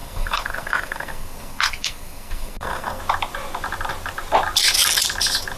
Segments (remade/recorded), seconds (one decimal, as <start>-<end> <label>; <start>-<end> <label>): 0.0-3.0 remade; 3.0-5.6 recorded